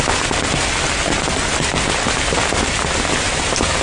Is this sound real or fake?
real